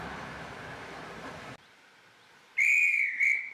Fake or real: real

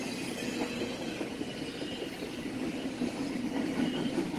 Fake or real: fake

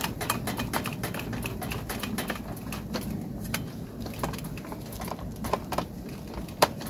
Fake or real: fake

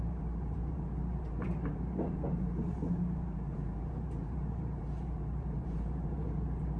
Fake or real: fake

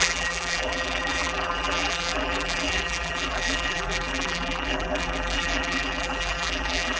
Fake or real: fake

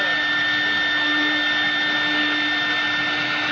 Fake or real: real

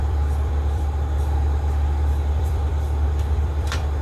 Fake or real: fake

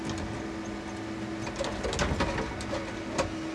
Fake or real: real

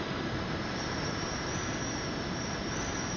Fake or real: fake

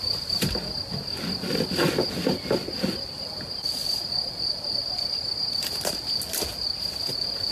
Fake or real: real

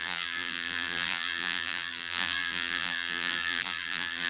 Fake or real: fake